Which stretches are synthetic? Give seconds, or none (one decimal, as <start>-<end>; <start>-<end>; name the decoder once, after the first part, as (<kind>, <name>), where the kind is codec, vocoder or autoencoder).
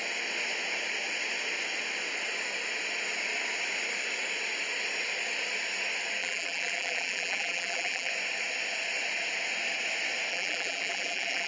6.2-8.1 (vocoder, BigVGAN v2); 10.3-11.5